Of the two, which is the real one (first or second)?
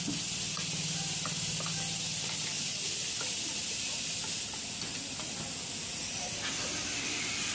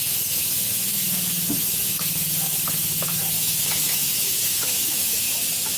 first